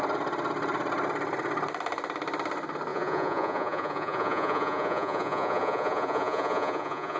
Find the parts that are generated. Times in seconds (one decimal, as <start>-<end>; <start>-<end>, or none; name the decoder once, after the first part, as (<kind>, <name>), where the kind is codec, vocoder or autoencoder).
2.9-7.2 (vocoder, Vocos)